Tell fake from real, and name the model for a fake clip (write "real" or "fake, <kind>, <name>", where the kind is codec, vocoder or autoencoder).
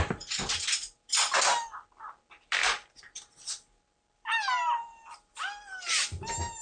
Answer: real